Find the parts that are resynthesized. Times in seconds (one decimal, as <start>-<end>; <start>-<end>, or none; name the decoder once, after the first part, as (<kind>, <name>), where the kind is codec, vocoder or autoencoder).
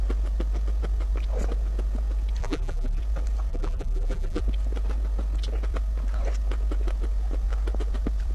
2.4-3.0 (vocoder, BigVGAN v2); 3.5-4.4